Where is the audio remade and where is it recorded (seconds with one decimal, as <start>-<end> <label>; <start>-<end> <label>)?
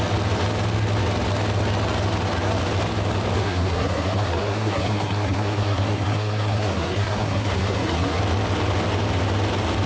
0.0-3.4 recorded; 3.4-8.2 remade; 8.2-9.9 recorded